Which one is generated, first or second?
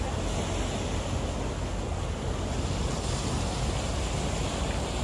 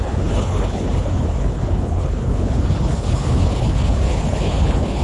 second